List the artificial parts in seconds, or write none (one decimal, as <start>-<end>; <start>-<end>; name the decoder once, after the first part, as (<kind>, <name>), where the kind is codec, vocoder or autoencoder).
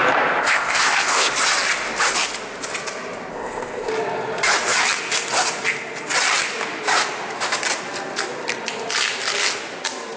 0.4-1.3 (codec, ZipCodec); 3.3-3.9